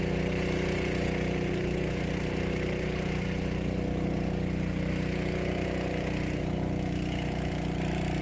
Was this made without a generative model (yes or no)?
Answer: yes